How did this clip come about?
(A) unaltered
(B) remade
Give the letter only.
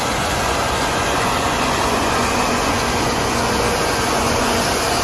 B